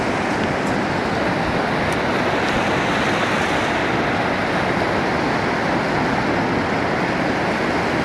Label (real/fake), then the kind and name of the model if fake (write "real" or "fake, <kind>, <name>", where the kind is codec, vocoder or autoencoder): real